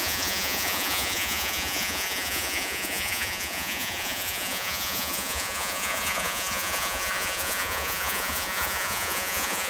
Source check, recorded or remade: remade